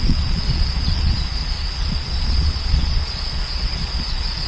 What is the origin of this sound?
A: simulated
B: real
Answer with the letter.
A